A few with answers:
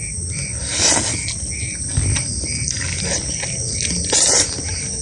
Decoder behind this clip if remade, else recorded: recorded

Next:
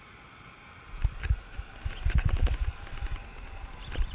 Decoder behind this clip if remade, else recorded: recorded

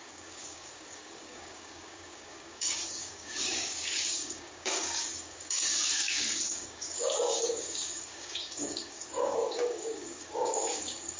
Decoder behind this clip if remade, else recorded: remade, codec, DAC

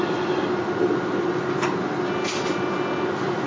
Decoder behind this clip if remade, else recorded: recorded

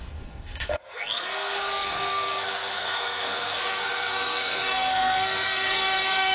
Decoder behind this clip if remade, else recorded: remade, codec, SNAC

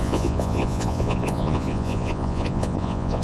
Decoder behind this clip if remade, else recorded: remade, vocoder, Vocos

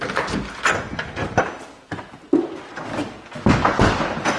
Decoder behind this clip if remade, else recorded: recorded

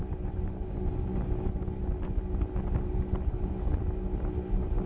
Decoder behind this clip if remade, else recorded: recorded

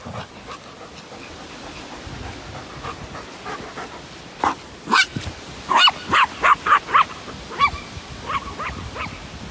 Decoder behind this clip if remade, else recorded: recorded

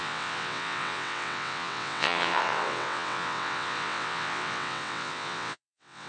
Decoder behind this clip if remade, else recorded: remade, vocoder, WaveNeXt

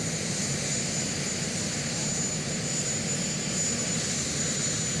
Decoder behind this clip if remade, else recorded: recorded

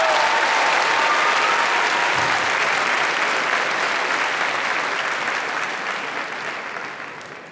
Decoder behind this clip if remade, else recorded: recorded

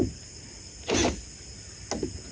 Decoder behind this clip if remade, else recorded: recorded